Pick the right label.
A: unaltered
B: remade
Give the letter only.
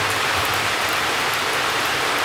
A